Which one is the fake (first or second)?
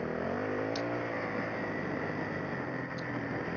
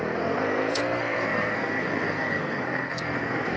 second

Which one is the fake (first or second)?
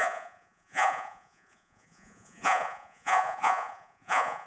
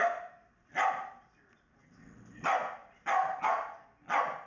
first